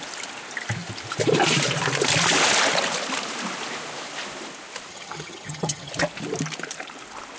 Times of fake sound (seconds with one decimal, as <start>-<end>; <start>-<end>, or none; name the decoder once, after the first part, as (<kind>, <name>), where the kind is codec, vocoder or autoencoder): 4.9-5.9 (vocoder, HiFi-GAN)

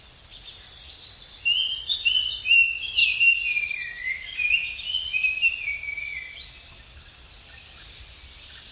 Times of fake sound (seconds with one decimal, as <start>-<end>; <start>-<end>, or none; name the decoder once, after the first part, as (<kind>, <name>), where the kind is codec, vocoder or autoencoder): none

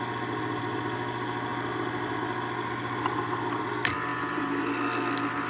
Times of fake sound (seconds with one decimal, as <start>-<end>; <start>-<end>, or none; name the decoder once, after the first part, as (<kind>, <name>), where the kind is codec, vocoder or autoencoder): none